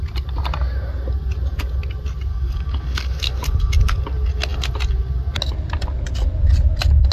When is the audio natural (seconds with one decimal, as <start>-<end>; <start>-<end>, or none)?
0.0-2.3; 4.0-7.1